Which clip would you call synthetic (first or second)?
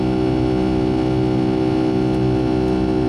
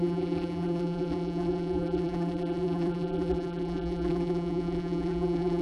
second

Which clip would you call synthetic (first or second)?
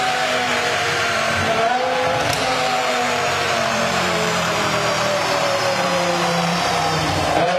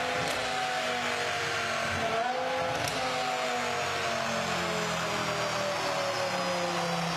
first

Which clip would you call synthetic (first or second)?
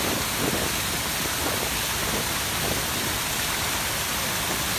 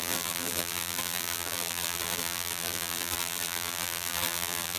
second